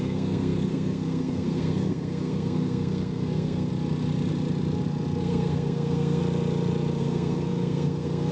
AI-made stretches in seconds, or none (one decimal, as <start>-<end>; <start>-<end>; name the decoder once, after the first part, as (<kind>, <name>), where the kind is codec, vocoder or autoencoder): 0.0-3.7 (codec, SNAC); 5.2-6.2; 7.0-8.3